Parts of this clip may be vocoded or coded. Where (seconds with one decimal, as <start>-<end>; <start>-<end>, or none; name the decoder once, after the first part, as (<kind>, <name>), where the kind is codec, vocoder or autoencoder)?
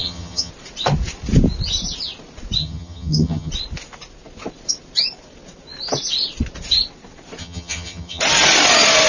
0.0-0.5 (vocoder, HiFi-GAN); 2.6-3.5; 7.4-8.2